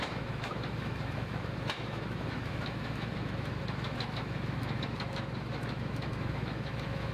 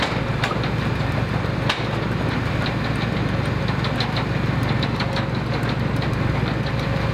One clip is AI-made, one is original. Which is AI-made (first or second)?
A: first